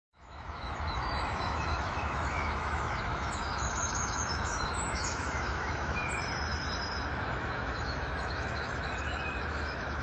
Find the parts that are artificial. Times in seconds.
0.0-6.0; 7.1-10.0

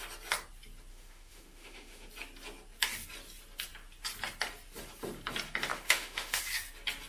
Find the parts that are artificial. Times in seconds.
0.9-2.1; 5.7-6.4

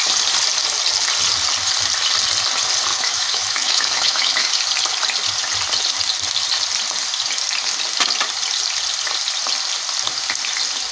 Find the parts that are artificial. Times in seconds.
2.9-4.6

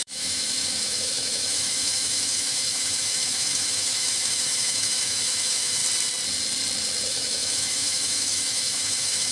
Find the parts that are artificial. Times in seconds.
0.0-5.8; 7.1-9.3